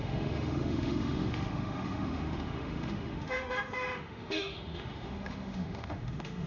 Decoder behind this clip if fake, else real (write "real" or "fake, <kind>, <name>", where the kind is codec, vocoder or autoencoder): fake, autoencoder, DAC-VAE